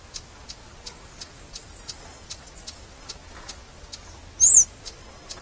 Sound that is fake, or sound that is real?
real